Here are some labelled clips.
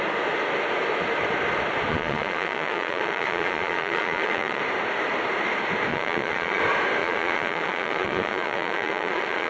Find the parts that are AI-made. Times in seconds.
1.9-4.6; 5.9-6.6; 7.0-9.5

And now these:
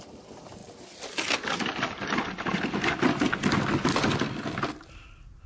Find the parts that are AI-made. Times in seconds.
none

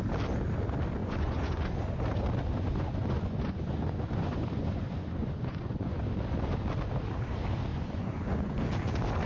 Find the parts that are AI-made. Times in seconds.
1.0-1.6; 2.4-6.0; 7.7-8.6

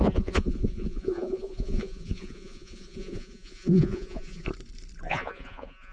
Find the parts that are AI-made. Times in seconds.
0.0-4.5; 5.1-5.9

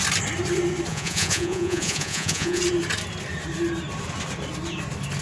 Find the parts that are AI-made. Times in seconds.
0.9-2.6

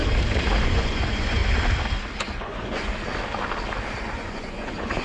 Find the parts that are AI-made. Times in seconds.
0.6-1.4; 2.2-2.9; 4.0-5.0

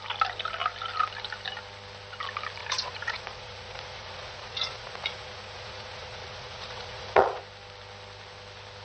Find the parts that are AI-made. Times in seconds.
2.6-7.4

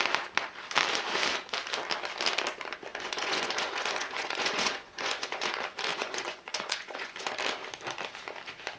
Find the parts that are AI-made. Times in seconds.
2.9-5.5; 5.9-7.3